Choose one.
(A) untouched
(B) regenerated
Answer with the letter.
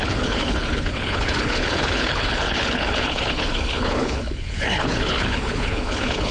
B